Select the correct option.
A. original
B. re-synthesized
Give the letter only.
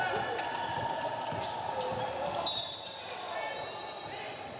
A